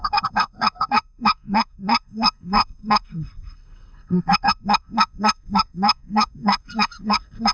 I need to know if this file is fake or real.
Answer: fake